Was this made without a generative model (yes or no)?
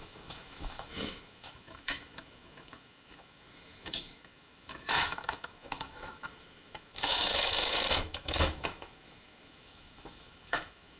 no